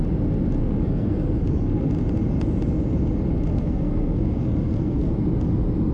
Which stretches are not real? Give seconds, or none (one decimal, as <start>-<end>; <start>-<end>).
0.6-1.9; 3.5-5.1